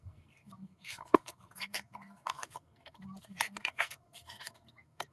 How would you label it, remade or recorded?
remade